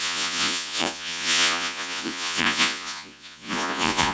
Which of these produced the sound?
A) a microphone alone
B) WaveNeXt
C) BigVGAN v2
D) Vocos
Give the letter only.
D